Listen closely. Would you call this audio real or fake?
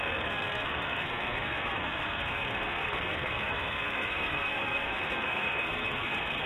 fake